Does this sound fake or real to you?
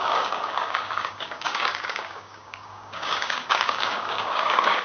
fake